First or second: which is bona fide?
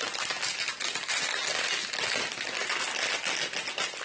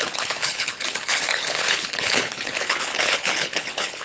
first